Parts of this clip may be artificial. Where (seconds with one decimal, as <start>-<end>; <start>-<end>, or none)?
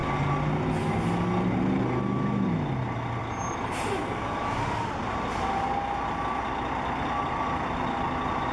none